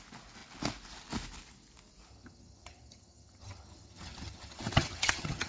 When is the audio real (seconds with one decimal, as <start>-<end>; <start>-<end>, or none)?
0.0-2.1